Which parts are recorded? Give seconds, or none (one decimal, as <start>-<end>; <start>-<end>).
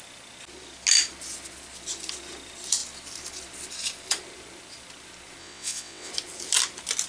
0.0-5.4; 6.1-7.1